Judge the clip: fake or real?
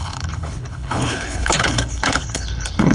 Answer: fake